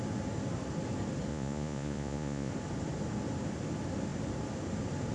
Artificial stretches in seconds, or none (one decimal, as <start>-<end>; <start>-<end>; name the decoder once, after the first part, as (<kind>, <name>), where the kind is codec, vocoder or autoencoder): 1.3-2.5 (vocoder, Vocos)